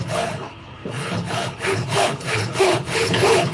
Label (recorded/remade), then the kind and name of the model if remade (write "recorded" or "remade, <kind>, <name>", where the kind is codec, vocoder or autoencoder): remade, codec, HILCodec